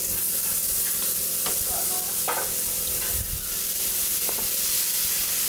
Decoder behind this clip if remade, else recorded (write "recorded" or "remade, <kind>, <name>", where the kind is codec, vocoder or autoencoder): recorded